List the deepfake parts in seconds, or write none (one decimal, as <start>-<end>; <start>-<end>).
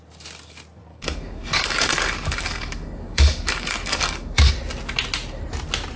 0.9-4.5